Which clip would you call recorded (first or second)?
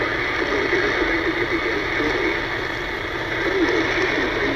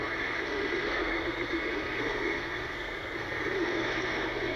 first